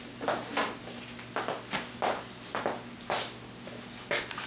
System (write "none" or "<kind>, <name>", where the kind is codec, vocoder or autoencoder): none